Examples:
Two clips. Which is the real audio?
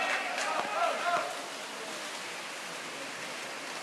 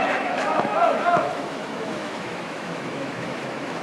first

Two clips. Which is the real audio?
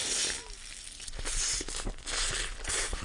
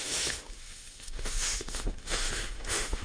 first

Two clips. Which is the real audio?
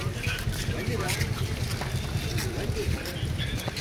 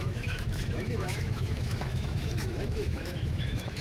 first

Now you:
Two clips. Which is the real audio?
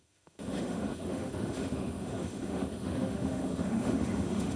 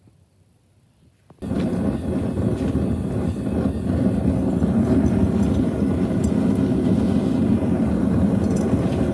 second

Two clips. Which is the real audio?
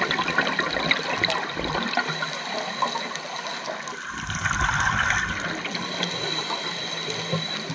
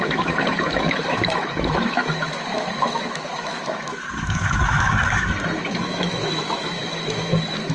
first